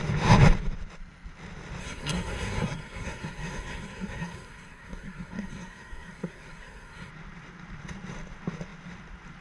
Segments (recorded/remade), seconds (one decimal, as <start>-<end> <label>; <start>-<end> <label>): 0.0-1.8 recorded; 1.8-7.1 remade; 7.1-9.4 recorded